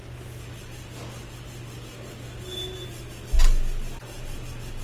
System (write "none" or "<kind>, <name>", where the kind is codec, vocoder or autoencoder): none